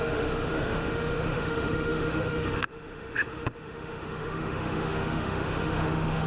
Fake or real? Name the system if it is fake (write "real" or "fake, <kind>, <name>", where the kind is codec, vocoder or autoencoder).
fake, autoencoder, DAC-VAE